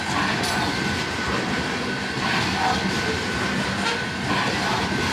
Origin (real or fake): real